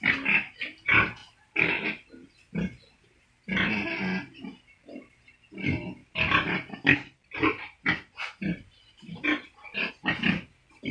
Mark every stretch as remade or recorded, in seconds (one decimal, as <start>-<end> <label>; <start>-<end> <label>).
0.0-1.2 recorded; 1.2-1.8 remade; 1.8-6.0 recorded; 6.0-9.9 remade; 9.9-10.9 recorded